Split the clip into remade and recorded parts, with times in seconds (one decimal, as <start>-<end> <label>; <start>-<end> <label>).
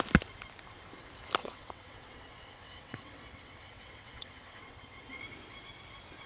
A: 0.0-1.4 recorded; 1.4-5.2 remade; 5.2-6.3 recorded